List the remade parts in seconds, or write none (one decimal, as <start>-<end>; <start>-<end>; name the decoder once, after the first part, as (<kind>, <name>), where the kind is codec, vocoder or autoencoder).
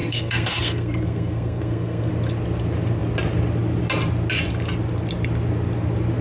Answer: 0.0-2.1 (codec, SNAC)